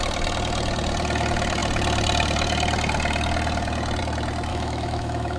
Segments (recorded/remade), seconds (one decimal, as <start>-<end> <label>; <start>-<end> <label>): 0.0-4.5 recorded; 4.5-5.4 remade